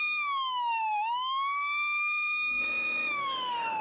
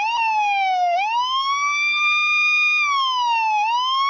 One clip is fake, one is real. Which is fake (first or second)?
first